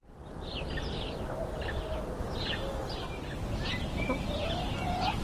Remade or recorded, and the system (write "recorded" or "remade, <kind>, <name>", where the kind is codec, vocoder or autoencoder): recorded